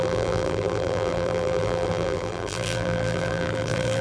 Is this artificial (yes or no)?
yes